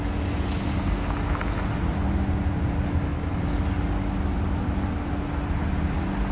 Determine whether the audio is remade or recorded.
recorded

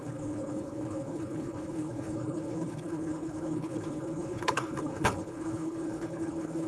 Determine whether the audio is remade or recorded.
remade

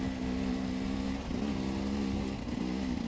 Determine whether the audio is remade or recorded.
recorded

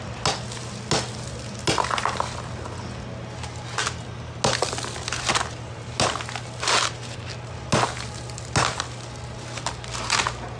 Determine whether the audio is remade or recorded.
recorded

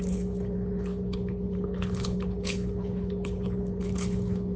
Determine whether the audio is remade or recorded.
remade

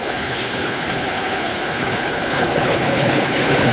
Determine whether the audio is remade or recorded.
remade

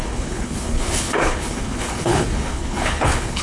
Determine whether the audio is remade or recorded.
remade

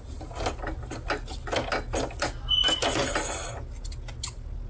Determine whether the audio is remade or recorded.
recorded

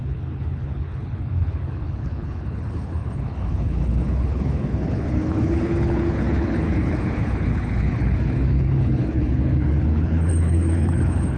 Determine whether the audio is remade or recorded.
remade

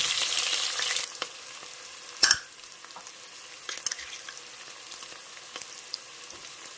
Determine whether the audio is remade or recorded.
recorded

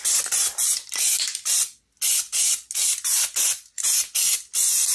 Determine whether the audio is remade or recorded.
recorded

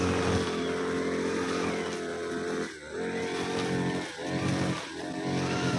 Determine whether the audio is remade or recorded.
recorded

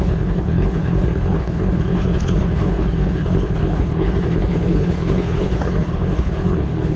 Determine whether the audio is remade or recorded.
remade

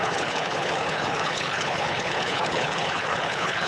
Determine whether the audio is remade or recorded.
remade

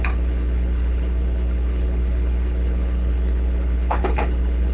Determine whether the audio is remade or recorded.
remade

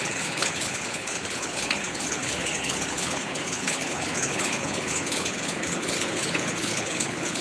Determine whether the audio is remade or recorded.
remade